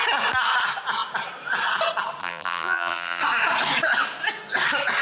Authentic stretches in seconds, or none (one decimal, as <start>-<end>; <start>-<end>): 0.0-2.2; 3.2-5.0